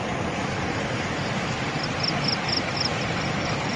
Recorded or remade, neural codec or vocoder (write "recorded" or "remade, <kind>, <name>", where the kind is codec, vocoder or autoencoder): recorded